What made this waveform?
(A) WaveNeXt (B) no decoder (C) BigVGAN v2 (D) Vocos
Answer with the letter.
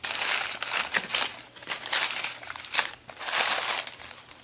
B